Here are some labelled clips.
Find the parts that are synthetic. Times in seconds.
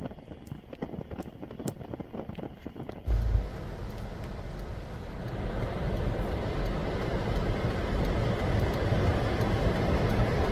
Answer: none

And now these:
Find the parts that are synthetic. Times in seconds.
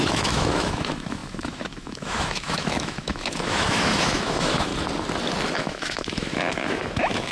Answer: 0.0-4.7 (autoencoder, DAC-VAE); 5.5-7.3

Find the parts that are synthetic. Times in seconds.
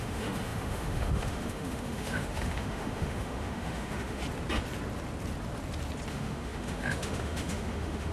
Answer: 0.0-4.2 (autoencoder, DAC-VAE); 6.1-8.1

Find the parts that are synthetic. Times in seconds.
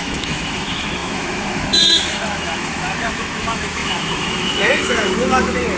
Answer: 0.0-5.8 (autoencoder, DAC-VAE)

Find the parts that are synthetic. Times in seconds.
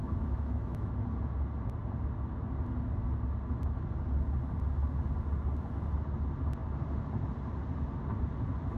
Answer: 0.0-0.9 (autoencoder, DAC-VAE)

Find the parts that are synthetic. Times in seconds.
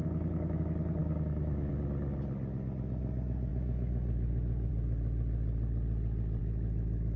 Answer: 0.0-0.6 (autoencoder, DAC-VAE); 1.0-1.7; 3.5-4.7; 6.4-7.2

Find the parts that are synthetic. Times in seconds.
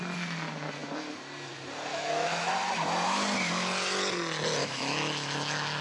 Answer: 1.9-2.5 (autoencoder, DAC-VAE); 4.6-5.8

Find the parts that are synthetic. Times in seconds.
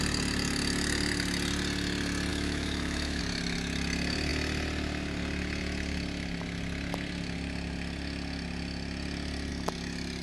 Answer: 2.3-3.2 (autoencoder, DAC-VAE)